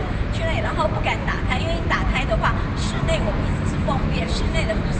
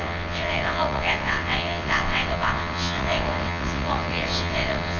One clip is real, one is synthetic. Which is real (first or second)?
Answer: first